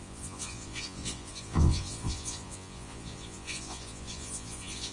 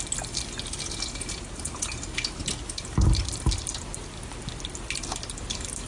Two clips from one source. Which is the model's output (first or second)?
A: first